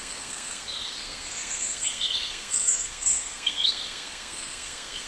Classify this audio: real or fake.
fake